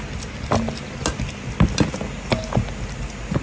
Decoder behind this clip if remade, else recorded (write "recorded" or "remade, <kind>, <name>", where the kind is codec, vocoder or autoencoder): recorded